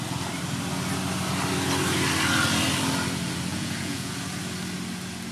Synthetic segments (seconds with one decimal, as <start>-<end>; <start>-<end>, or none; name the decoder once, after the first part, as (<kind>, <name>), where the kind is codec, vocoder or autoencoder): 3.5-4.1 (vocoder, Vocos)